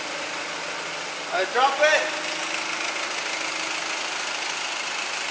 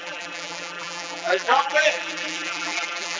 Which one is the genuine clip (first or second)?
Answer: first